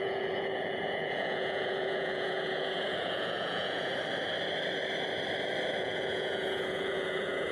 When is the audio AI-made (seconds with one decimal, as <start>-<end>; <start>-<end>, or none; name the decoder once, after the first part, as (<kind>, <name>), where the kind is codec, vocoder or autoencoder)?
0.0-3.9 (vocoder, Vocos); 5.8-7.5